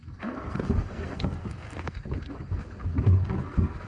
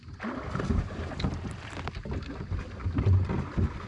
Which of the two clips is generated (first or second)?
first